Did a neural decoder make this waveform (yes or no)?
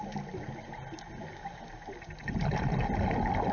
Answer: no